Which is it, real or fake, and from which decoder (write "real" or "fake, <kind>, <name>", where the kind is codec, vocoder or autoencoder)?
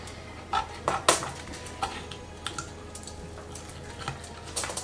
real